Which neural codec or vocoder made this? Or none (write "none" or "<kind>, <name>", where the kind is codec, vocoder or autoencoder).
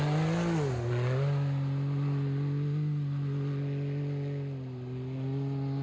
none